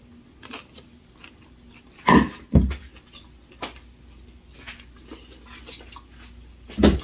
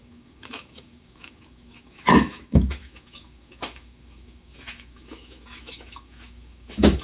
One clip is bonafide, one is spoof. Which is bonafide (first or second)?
first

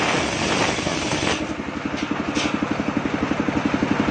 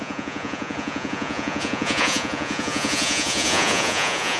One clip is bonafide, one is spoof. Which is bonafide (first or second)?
first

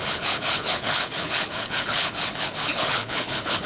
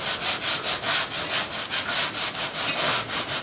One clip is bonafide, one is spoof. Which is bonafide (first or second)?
second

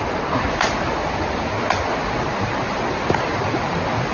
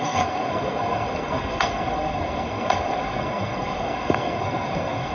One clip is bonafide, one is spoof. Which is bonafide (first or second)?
first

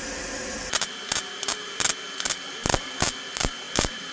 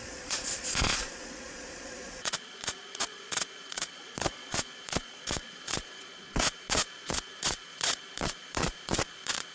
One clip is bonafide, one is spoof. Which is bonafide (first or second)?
first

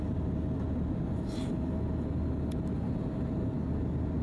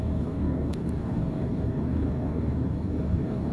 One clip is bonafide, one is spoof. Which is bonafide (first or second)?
first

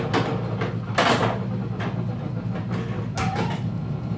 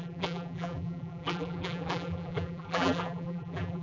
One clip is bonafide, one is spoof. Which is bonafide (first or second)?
first